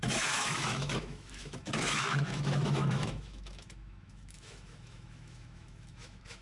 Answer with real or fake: fake